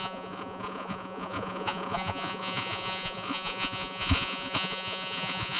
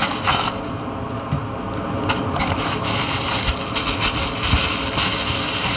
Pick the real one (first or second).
second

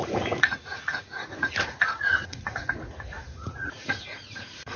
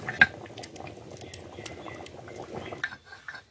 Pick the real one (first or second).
second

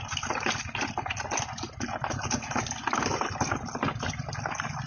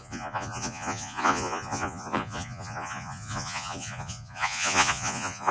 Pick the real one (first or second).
first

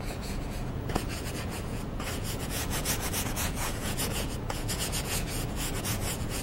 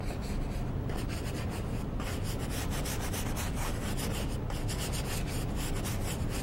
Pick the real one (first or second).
second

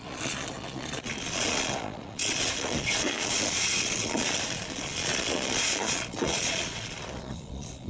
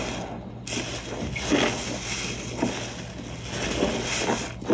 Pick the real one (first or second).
second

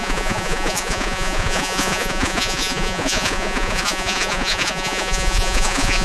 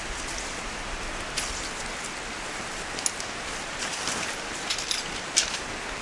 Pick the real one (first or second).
second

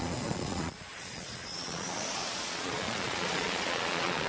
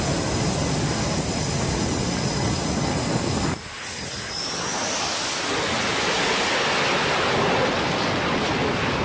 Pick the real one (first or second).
second